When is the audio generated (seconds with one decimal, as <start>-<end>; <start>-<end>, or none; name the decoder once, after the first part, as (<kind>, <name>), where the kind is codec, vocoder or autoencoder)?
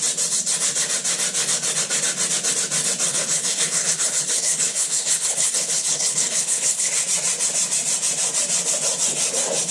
3.1-6.9 (codec, HILCodec)